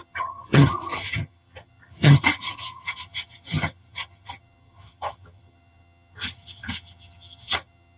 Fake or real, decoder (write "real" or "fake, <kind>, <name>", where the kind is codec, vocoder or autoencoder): fake, vocoder, HiFi-GAN